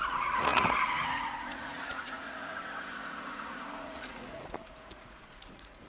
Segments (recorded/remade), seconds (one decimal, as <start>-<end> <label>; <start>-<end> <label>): 0.0-5.9 remade